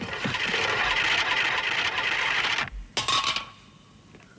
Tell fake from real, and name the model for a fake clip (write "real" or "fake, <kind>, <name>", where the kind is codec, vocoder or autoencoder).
real